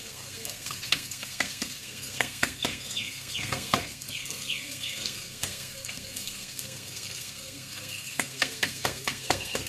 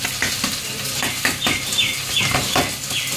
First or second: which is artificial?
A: first